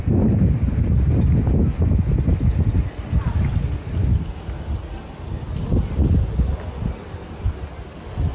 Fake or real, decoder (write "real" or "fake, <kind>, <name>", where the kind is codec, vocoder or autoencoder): real